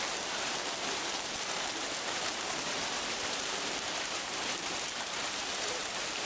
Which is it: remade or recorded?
remade